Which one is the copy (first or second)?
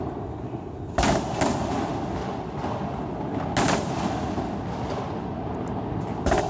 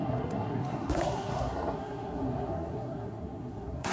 second